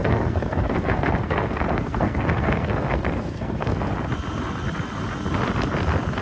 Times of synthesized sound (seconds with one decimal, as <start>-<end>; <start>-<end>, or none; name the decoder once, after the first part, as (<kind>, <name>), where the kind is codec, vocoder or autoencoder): 0.0-3.7 (codec, SNAC)